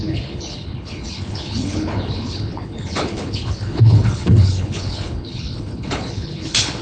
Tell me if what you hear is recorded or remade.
remade